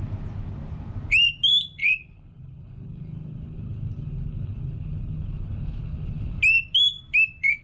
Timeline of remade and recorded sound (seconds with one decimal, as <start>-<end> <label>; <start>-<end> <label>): 0.0-1.8 recorded; 1.8-6.4 remade; 6.4-7.6 recorded

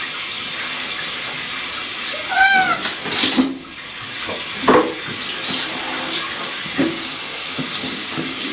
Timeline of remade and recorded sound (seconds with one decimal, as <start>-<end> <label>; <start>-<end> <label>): 0.0-6.8 recorded; 6.8-8.5 remade

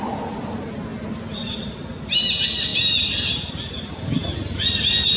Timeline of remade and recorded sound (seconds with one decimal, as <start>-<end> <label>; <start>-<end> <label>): 0.0-5.2 recorded